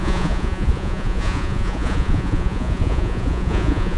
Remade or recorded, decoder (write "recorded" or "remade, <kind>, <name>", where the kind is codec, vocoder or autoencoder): remade, vocoder, Vocos